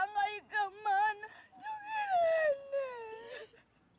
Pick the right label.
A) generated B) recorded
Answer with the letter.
B